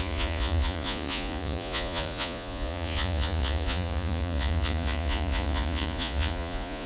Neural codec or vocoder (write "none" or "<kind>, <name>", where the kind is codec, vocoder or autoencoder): vocoder, Vocos